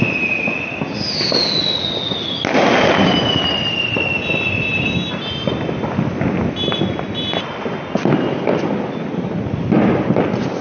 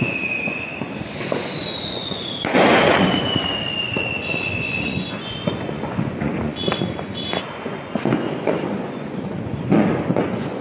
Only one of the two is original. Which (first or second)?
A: first